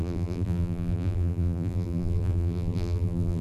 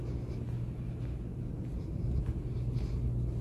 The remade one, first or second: first